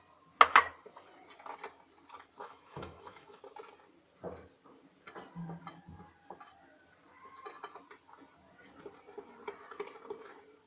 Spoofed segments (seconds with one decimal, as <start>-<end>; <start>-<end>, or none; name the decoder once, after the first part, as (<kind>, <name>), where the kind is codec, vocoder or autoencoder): 2.4-3.4 (autoencoder, DAC-VAE)

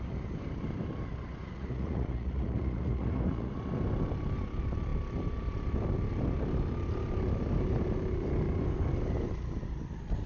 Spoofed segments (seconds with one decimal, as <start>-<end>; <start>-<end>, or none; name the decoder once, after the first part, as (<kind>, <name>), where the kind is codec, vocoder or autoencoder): 1.5-3.5 (vocoder, Vocos)

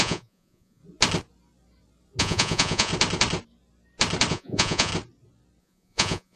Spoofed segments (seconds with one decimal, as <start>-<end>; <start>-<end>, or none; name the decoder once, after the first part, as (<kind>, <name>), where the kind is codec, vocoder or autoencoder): 0.0-0.8 (vocoder, Vocos); 2.2-2.9; 4.3-4.9; 5.6-6.4

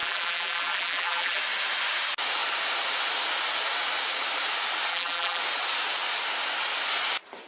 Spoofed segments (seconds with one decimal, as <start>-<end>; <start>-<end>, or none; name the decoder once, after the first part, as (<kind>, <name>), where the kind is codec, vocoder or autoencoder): 0.0-1.4 (vocoder, BigVGAN v2); 4.9-5.4

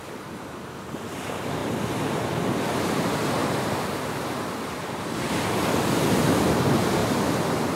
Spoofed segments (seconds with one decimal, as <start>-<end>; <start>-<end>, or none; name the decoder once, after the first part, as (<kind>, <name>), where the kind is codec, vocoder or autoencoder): 0.0-1.6 (vocoder, BigVGAN v2); 2.6-3.4; 5.0-7.8

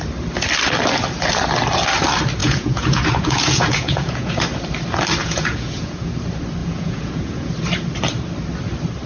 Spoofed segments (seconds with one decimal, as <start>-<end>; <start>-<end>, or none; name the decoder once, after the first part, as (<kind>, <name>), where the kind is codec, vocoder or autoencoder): 2.4-4.4 (vocoder, Vocos); 5.2-6.1; 6.6-7.5

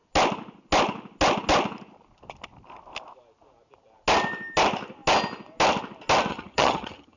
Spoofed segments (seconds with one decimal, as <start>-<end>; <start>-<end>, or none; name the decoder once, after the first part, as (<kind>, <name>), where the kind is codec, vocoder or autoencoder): 6.3-7.2 (vocoder, HiFi-GAN)